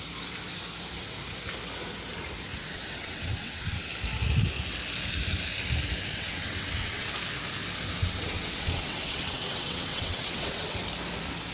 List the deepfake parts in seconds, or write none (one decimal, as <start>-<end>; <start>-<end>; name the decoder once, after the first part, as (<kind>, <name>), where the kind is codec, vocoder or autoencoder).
2.5-3.9 (vocoder, WaveNeXt); 6.1-7.1; 8.0-10.8